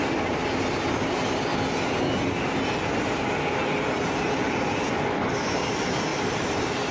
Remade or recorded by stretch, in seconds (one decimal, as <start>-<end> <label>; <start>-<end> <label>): 0.0-6.1 recorded; 6.1-6.9 remade